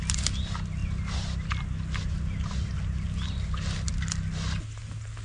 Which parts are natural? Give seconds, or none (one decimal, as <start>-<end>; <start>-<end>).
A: 0.0-5.2